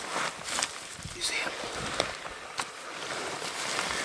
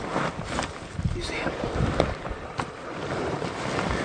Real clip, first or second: first